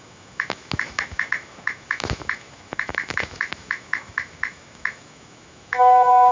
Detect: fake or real fake